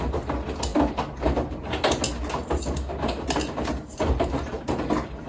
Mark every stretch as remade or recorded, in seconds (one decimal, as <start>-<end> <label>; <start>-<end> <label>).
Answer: 0.0-5.3 recorded